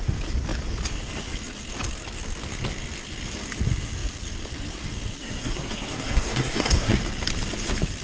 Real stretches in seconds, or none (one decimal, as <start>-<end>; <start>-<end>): 0.0-5.2; 7.0-8.0